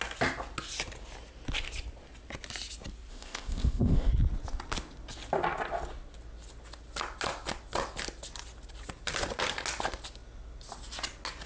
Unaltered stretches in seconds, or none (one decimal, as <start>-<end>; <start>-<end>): 0.0-3.1; 4.1-11.5